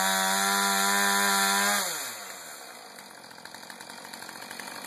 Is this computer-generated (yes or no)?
no